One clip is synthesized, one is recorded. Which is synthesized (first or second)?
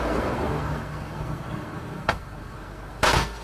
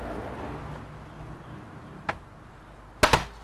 first